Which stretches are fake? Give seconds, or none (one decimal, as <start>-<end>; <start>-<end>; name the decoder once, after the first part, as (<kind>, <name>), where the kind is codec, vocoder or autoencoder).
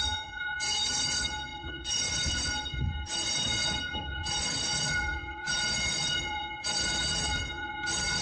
0.0-8.2 (vocoder, Vocos)